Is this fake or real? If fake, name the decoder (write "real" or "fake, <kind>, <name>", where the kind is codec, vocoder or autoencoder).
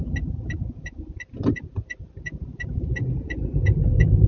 fake, vocoder, BigVGAN v2